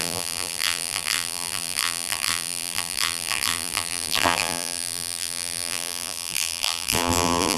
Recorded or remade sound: remade